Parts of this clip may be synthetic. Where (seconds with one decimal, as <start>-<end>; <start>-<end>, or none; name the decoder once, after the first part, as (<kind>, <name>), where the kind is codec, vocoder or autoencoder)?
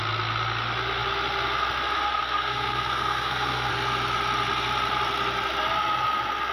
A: 2.2-3.7 (codec, SNAC)